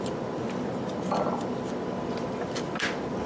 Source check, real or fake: real